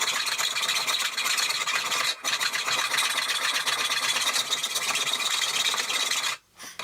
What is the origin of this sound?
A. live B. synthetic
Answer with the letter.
A